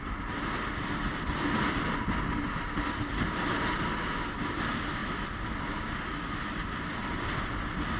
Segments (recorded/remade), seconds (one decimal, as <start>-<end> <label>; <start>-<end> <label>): 0.0-8.0 recorded